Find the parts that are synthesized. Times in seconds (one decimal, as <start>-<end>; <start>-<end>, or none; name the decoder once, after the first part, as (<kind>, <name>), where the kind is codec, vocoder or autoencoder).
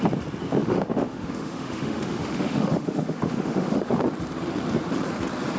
0.6-4.0 (autoencoder, DAC-VAE)